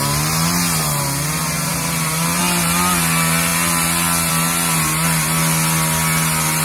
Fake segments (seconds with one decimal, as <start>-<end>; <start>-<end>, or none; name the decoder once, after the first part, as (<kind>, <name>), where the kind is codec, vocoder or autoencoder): 1.7-2.4 (vocoder, BigVGAN v2)